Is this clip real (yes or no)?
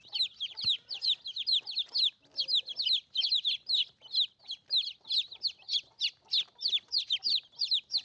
yes